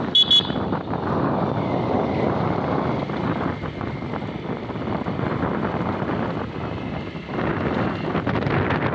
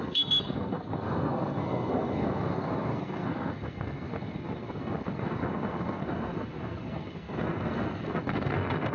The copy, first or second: second